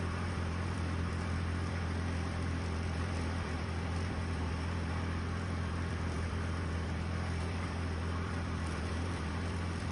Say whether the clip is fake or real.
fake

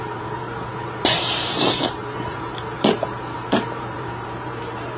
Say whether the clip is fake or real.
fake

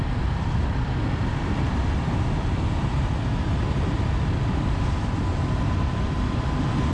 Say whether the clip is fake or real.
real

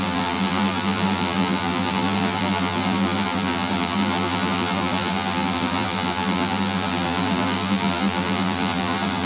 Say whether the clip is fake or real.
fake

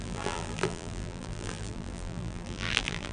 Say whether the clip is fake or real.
fake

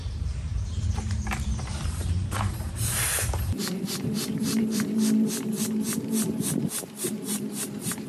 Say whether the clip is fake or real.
fake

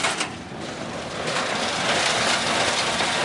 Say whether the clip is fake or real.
real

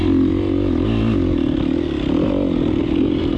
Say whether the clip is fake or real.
real